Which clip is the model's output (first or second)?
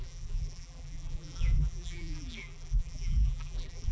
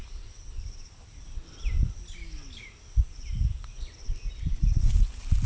first